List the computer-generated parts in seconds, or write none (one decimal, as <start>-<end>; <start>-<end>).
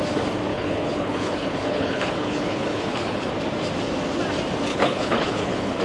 0.5-3.3; 4.7-5.8